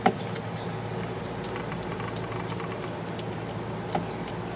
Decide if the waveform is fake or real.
real